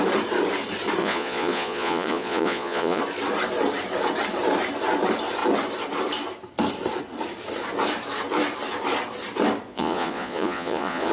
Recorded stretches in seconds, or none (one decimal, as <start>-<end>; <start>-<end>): 0.0-1.0; 3.0-9.7